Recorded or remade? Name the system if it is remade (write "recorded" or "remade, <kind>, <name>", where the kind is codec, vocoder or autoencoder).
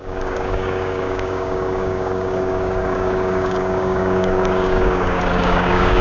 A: remade, codec, DAC